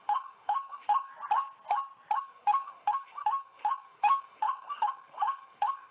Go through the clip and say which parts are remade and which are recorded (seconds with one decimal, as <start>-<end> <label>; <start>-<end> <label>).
0.0-1.1 remade; 1.1-2.2 recorded; 2.2-5.9 remade